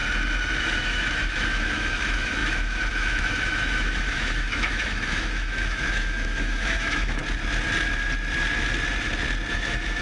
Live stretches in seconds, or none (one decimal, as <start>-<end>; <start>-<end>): 0.0-0.6; 7.2-9.5